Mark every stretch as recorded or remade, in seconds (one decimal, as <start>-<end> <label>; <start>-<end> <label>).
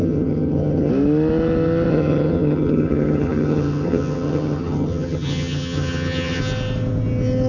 0.0-0.9 remade; 0.9-1.9 recorded; 1.9-6.4 remade; 6.4-7.5 recorded